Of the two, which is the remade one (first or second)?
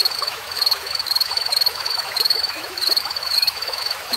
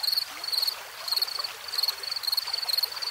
first